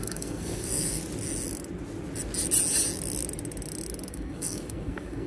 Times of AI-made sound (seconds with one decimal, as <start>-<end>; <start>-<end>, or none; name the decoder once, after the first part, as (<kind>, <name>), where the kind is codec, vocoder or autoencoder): 0.0-1.0 (codec, SNAC); 4.1-5.3